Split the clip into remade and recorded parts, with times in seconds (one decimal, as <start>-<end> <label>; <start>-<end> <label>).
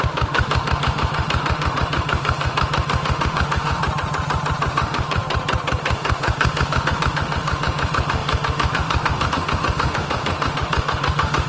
0.0-3.8 remade; 3.8-4.7 recorded; 4.7-5.2 remade; 5.2-5.8 recorded; 5.8-11.5 remade